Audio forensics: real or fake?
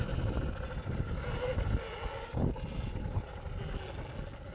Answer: real